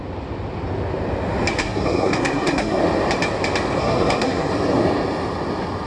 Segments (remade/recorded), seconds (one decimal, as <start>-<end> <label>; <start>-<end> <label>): 0.0-1.6 recorded; 1.6-2.8 remade; 2.8-3.8 recorded; 3.8-4.5 remade; 4.5-5.9 recorded